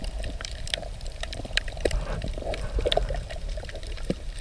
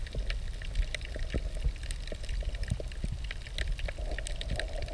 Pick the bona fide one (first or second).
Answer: second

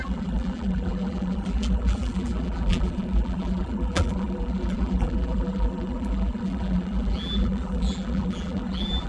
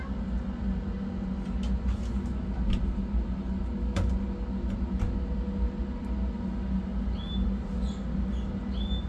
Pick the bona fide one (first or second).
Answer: second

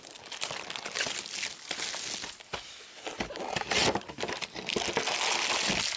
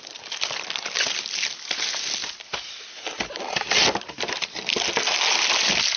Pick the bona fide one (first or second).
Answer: first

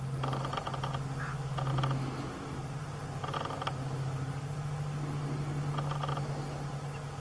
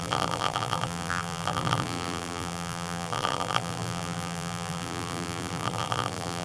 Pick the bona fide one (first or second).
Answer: first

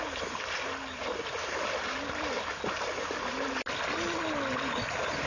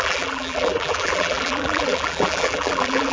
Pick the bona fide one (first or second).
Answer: first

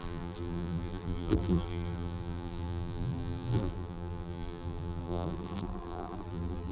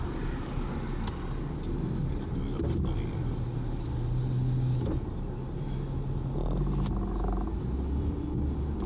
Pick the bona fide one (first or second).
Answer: second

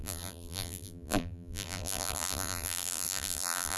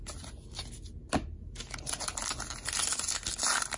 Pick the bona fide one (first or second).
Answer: second